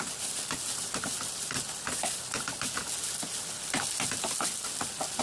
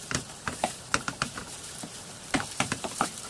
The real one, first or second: first